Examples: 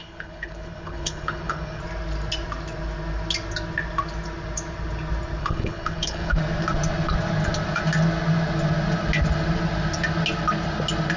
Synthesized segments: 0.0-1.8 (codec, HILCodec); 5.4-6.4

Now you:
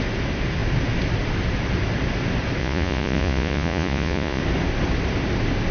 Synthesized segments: 2.6-4.4 (vocoder, Vocos)